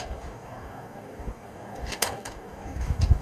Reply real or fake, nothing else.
fake